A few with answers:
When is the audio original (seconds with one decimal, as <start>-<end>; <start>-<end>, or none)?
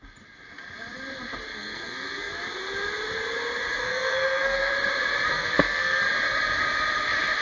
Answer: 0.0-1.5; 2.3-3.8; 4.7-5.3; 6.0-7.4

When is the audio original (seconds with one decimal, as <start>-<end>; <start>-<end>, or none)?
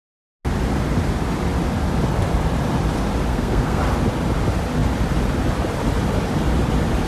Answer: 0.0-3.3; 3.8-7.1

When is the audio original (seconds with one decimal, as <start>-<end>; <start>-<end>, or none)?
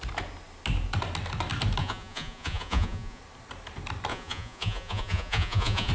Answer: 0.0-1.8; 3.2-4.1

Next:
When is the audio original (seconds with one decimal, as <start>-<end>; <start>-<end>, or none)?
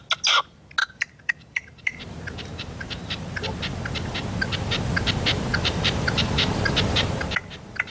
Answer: 0.0-0.8; 3.4-5.5; 6.5-7.9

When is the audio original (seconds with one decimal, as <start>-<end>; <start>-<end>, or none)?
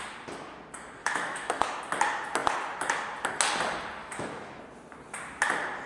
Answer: 0.0-1.0; 1.8-4.0; 4.6-5.9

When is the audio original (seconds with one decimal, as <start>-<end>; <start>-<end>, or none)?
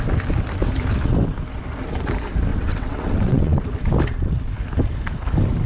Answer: 0.0-2.5; 3.6-5.7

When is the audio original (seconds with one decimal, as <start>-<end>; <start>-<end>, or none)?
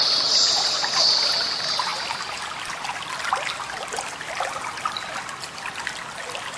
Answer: 0.0-6.6